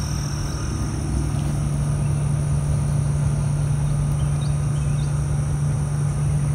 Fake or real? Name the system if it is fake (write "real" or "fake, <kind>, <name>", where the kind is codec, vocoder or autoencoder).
real